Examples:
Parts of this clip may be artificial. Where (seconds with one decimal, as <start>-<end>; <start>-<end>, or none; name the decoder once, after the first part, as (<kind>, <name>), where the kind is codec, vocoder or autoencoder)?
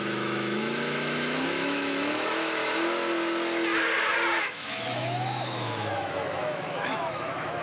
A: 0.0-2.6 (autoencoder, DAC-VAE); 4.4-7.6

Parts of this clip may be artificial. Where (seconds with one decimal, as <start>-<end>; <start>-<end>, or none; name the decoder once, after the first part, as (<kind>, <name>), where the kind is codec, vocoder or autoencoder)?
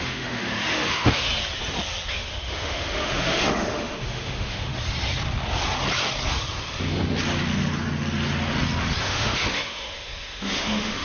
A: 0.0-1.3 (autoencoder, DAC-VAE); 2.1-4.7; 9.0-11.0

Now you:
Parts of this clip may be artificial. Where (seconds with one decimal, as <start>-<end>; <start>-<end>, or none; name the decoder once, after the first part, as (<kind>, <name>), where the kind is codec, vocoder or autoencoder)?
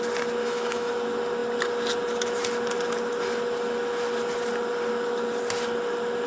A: 0.4-0.9 (autoencoder, DAC-VAE)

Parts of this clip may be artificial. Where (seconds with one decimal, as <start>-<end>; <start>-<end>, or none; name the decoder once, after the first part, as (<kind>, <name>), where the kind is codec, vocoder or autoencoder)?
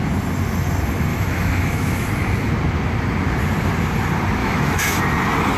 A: 1.1-2.1 (autoencoder, DAC-VAE); 4.4-5.0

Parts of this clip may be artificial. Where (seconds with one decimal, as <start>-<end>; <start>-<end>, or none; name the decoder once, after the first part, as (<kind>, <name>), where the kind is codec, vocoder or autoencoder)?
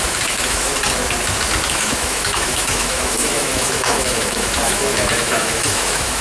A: 0.0-0.7 (autoencoder, DAC-VAE); 1.7-6.2